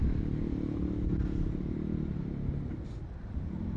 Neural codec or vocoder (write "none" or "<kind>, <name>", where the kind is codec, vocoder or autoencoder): none